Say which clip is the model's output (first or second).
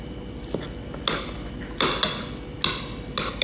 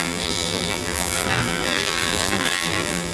second